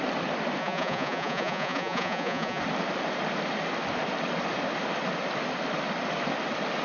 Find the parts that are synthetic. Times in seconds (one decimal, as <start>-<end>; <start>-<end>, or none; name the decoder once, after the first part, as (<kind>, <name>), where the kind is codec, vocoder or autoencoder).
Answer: 0.6-2.6 (vocoder, Vocos)